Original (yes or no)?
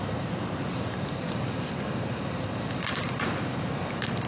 no